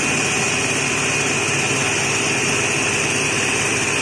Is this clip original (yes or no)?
yes